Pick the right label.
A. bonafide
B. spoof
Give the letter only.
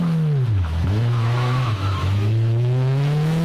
B